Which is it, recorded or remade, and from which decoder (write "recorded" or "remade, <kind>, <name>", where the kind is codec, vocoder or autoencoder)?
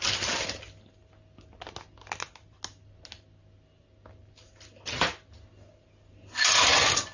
recorded